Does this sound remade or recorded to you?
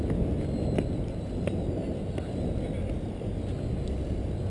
recorded